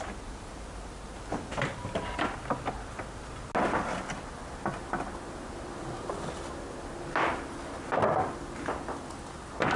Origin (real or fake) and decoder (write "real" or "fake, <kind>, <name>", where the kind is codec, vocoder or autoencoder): real